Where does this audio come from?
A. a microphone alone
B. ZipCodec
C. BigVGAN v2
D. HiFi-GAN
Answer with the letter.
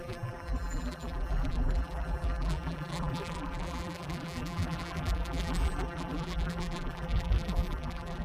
C